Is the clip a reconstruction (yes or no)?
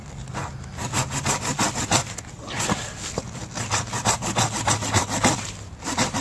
no